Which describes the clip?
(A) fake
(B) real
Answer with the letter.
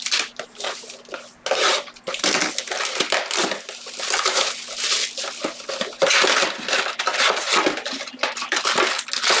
B